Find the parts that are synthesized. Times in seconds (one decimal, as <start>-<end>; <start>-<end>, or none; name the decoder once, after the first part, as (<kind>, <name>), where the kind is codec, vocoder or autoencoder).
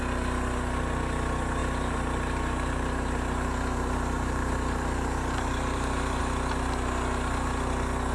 1.6-6.2 (vocoder, BigVGAN v2)